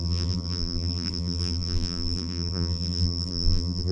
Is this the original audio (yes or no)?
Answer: no